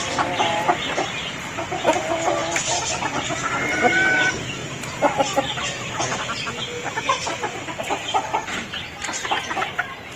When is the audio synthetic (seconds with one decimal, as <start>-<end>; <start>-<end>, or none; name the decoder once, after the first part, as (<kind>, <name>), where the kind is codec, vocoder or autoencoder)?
none